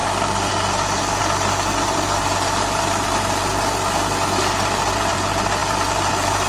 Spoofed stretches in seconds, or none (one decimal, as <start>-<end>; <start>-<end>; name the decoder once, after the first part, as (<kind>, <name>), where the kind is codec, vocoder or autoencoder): none

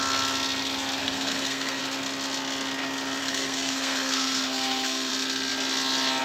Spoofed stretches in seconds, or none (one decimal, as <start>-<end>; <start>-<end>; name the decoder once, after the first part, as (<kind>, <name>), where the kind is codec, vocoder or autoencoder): 1.0-1.8 (codec, SNAC); 3.2-5.1

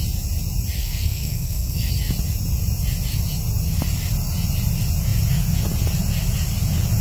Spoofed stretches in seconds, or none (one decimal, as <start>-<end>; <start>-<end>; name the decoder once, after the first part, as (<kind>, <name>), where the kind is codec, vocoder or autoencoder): 0.8-1.9 (codec, SNAC)

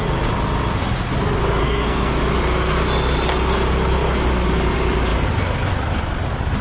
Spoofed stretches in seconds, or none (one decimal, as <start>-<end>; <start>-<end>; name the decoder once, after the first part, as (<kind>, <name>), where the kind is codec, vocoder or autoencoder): 1.6-2.1 (codec, SNAC)